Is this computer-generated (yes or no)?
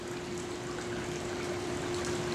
no